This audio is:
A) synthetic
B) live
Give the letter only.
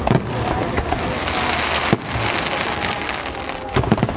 B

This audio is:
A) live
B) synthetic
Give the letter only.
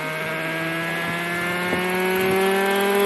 A